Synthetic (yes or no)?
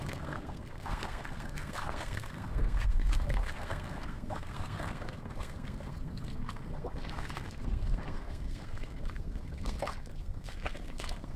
yes